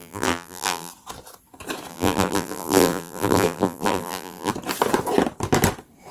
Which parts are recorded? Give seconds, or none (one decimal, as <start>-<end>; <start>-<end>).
0.9-1.9; 4.5-6.1